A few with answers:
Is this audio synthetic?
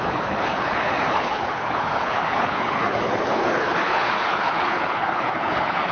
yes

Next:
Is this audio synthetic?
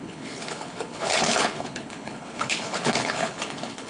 yes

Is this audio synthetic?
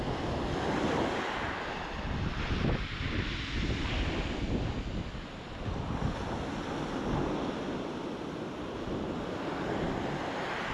no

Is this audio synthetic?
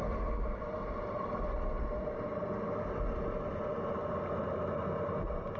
no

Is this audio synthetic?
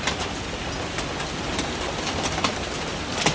no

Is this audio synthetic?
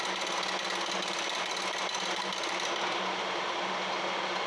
no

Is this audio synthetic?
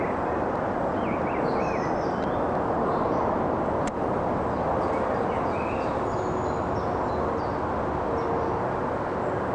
no